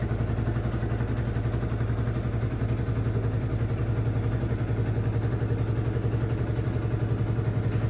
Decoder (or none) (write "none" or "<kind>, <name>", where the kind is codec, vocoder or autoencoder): none